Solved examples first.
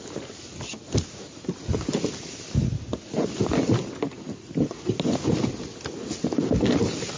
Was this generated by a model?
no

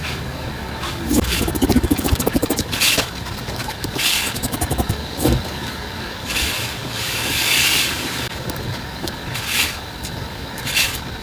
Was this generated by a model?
yes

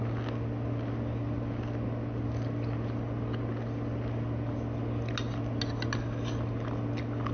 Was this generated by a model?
no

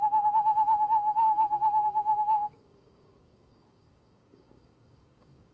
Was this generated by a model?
yes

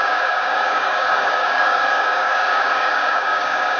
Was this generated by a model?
yes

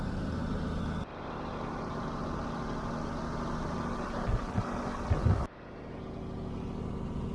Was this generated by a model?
no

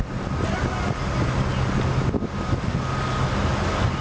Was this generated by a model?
no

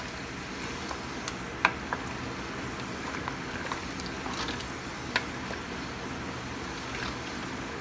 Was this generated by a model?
no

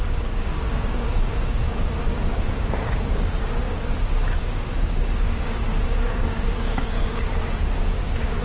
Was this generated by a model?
yes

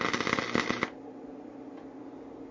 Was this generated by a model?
no